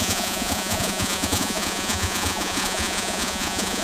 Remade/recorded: remade